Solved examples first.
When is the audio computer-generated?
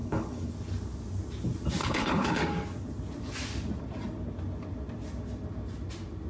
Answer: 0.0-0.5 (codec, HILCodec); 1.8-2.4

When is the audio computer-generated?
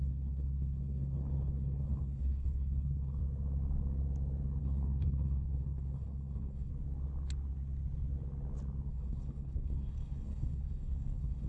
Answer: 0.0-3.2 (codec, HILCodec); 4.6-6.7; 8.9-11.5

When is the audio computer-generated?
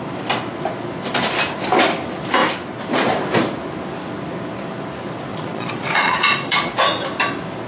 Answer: 5.3-6.8 (vocoder, Vocos)